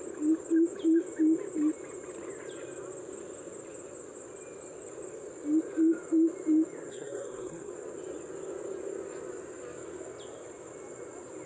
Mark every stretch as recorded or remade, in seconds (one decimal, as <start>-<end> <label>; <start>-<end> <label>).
0.0-6.9 recorded; 6.9-7.7 remade; 7.7-11.5 recorded